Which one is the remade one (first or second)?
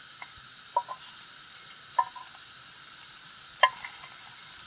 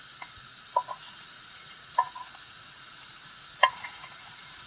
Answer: second